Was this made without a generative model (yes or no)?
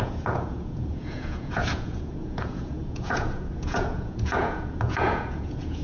no